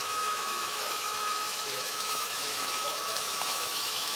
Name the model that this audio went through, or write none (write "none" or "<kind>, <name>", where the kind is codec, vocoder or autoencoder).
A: autoencoder, DAC-VAE